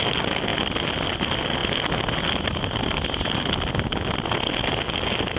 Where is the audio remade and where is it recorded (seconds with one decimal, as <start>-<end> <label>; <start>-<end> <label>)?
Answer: 0.0-5.4 recorded